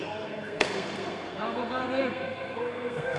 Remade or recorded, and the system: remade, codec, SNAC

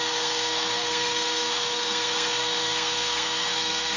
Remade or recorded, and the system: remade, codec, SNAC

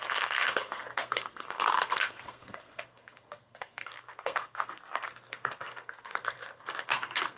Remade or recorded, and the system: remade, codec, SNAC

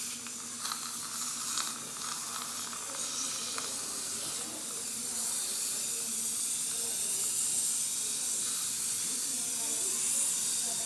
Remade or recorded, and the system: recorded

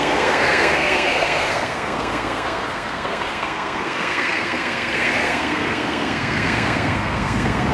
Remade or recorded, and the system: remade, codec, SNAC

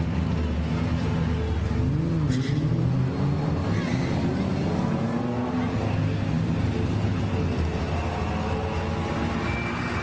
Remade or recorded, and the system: recorded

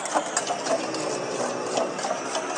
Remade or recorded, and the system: recorded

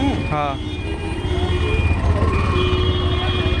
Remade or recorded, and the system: recorded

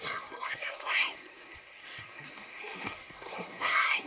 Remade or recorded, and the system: remade, codec, SNAC